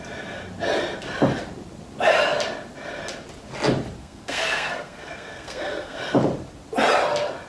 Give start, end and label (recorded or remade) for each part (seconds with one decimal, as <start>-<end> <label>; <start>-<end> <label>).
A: 0.0-4.0 recorded; 4.0-6.0 remade; 6.0-7.5 recorded

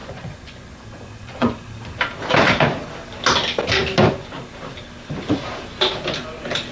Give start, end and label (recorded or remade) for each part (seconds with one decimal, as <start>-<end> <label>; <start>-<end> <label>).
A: 0.0-1.6 remade; 1.6-6.7 recorded